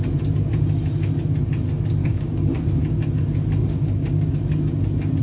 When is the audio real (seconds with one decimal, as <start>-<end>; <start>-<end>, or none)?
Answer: 0.0-2.0; 2.6-3.6; 4.3-5.2